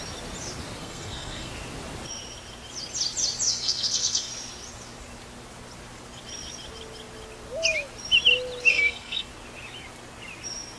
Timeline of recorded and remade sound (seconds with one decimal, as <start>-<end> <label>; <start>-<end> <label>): 0.0-0.8 recorded; 0.8-1.5 remade; 1.5-3.5 recorded; 3.5-4.3 remade; 4.3-8.7 recorded; 8.7-9.3 remade; 9.3-10.8 recorded